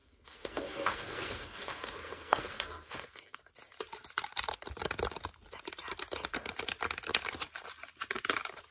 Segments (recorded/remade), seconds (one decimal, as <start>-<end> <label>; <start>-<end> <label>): 0.0-3.4 remade; 3.4-8.7 recorded